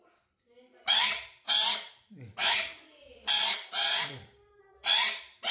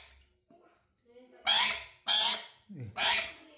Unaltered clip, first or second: second